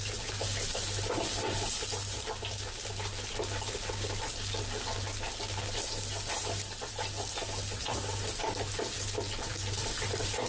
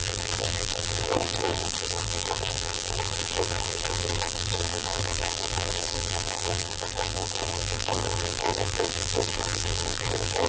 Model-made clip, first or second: second